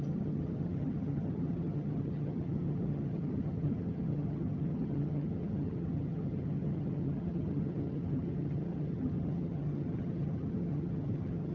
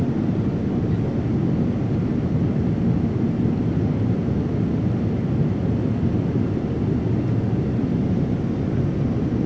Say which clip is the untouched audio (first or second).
second